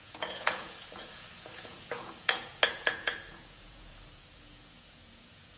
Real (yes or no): no